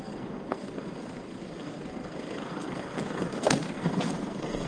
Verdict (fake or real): fake